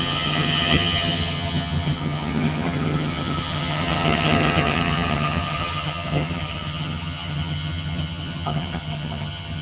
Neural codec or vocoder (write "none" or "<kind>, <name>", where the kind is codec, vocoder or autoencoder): vocoder, HiFi-GAN